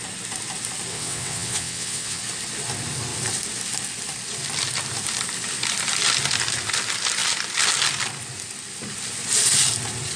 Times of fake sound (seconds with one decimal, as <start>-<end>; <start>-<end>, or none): 0.9-2.2